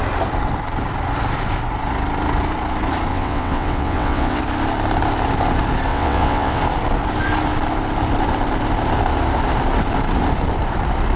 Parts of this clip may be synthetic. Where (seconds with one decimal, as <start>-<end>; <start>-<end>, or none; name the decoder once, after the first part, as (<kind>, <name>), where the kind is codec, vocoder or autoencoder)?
3.1-4.4 (vocoder, WaveNeXt); 5.9-6.6